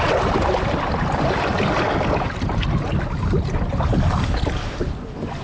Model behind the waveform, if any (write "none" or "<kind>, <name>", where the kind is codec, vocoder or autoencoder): none